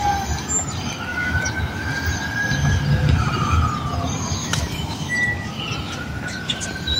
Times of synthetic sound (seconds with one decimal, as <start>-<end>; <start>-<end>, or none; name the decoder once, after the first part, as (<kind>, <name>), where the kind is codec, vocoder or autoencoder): 1.1-1.9 (autoencoder, DAC-VAE); 4.4-5.1